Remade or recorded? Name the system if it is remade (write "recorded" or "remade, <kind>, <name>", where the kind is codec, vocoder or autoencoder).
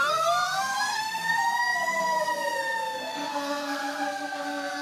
remade, codec, SNAC